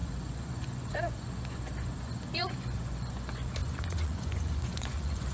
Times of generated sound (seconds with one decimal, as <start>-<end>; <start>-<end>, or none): 0.0-5.3